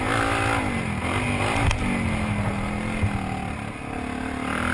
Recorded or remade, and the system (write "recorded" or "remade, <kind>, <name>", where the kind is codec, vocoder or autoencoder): recorded